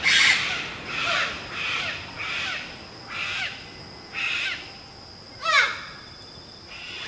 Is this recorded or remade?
recorded